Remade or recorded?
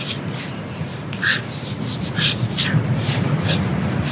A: recorded